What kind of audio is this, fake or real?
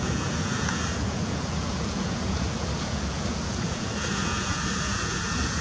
fake